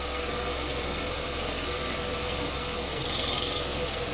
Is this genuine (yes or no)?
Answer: no